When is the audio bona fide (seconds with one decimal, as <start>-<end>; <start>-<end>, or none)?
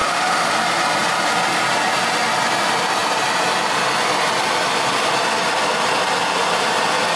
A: 0.5-7.2